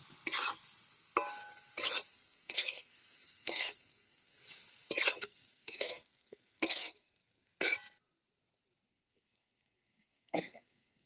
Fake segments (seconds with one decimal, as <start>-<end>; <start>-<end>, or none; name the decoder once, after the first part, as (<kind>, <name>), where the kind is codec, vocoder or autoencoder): 2.1-4.4 (codec, SNAC); 5.1-7.2; 8.9-11.1